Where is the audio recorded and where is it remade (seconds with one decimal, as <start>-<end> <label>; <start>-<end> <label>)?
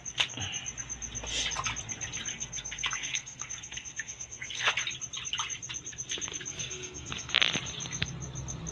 0.0-2.3 recorded; 2.3-4.7 remade; 4.7-6.5 recorded; 6.5-7.3 remade; 7.3-8.7 recorded